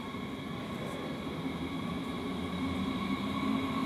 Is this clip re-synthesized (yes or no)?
no